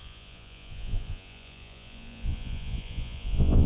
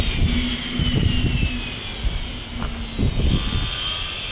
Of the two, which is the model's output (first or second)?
first